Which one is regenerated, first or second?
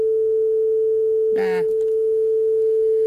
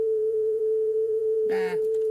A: second